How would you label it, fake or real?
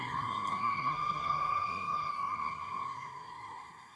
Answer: fake